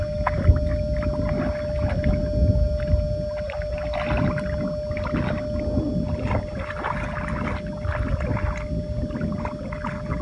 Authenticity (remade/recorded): recorded